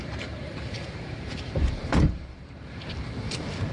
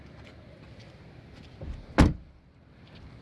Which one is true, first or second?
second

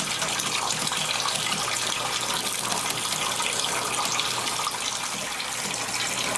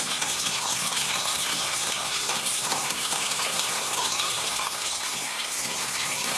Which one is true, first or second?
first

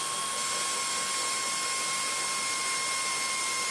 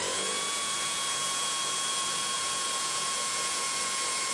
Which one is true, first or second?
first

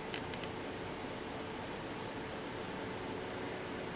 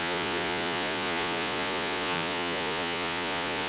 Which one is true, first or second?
first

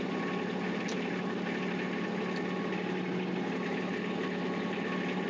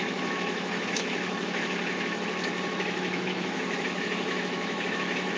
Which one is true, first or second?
first